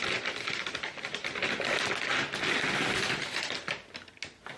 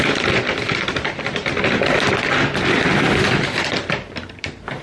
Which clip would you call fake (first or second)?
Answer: second